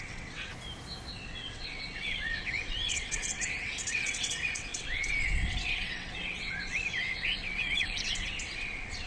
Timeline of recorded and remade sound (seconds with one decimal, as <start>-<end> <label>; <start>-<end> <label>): 0.0-0.5 remade; 0.5-1.1 recorded; 1.1-9.1 remade